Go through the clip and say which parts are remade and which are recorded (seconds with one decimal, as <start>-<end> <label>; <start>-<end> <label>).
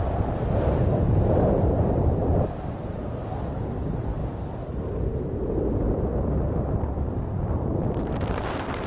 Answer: 0.0-4.2 remade; 4.2-7.7 recorded; 7.7-8.9 remade